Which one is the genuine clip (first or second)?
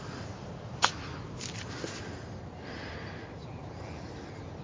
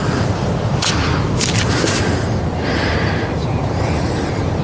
first